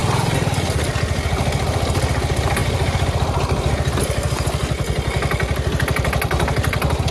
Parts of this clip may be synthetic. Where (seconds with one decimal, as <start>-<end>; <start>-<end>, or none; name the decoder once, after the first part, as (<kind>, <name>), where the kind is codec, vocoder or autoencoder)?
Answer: none